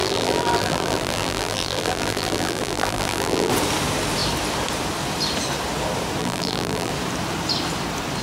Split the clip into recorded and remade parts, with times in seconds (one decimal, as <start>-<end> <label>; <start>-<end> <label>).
0.0-3.5 remade; 3.5-6.2 recorded; 6.2-6.9 remade; 6.9-8.2 recorded